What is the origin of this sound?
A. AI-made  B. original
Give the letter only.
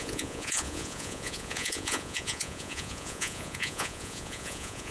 A